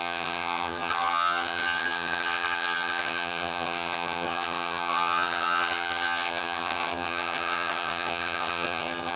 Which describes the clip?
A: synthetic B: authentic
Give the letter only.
A